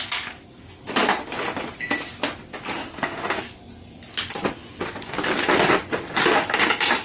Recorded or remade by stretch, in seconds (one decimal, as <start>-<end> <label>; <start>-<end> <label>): 0.0-2.8 recorded; 2.8-3.4 remade; 3.4-7.0 recorded

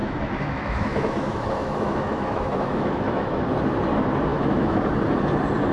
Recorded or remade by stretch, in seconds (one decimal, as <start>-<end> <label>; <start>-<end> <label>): 0.0-3.4 remade; 3.4-4.3 recorded; 4.3-4.9 remade; 4.9-5.7 recorded

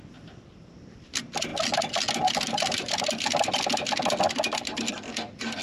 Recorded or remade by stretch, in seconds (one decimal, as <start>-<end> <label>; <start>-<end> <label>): 0.0-5.6 recorded

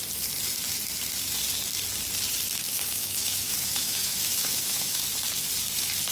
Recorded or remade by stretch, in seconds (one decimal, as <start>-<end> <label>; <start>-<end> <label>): 0.0-2.7 recorded; 2.7-5.0 remade; 5.0-6.1 recorded

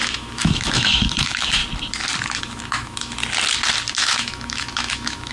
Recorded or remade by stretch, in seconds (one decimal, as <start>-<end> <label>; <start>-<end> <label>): 0.0-1.6 remade; 1.6-2.4 recorded; 2.4-3.2 remade; 3.2-3.9 recorded; 3.9-5.3 remade

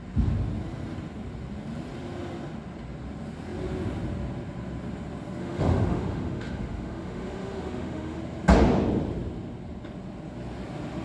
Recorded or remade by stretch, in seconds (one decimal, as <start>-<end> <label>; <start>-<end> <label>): 0.0-5.4 recorded; 5.4-8.2 remade; 8.2-11.0 recorded